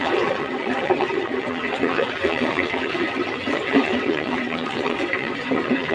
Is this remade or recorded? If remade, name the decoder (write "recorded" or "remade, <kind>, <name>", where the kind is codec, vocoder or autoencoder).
remade, vocoder, WaveNeXt